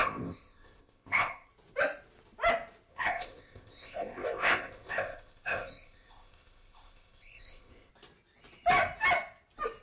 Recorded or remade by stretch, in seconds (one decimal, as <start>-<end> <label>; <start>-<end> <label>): 0.0-1.5 remade; 1.5-2.9 recorded; 2.9-7.9 remade; 7.9-9.8 recorded